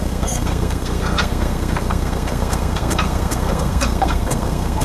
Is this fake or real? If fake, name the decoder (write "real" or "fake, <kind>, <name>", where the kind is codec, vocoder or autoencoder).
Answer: fake, codec, SNAC